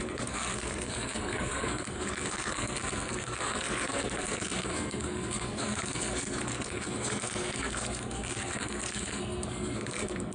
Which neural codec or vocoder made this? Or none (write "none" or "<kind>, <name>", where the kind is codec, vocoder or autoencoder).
codec, SNAC